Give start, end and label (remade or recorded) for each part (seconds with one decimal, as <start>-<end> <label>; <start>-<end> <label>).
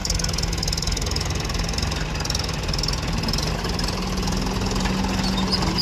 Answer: 0.0-5.8 recorded